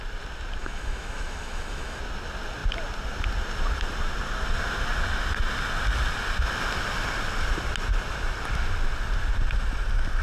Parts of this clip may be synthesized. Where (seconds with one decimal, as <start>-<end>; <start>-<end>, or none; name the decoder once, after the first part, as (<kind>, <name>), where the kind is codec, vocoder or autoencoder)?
0.6-2.0 (autoencoder, DAC-VAE)